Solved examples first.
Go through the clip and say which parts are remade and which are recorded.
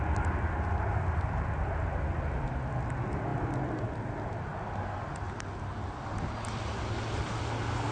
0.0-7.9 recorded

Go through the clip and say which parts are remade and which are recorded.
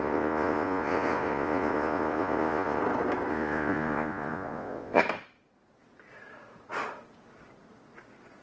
0.0-2.8 remade; 2.8-3.3 recorded; 3.3-5.0 remade; 5.0-8.4 recorded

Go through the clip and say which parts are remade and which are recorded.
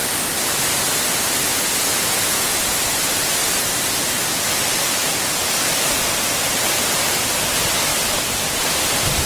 0.0-1.5 recorded; 1.5-2.6 remade; 2.6-9.3 recorded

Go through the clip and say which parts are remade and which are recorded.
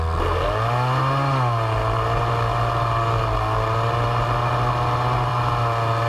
0.0-6.1 recorded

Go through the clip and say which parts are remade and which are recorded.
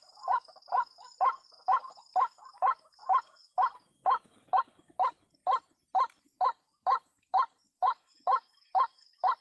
0.0-5.4 remade; 5.4-6.2 recorded; 6.2-9.4 remade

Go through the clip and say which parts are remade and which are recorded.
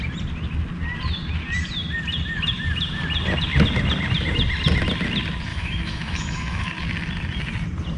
0.0-5.5 recorded; 5.5-6.7 remade; 6.7-8.0 recorded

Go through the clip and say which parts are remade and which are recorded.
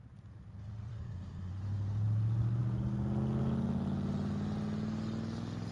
0.0-0.9 recorded; 0.9-1.5 remade; 1.5-5.7 recorded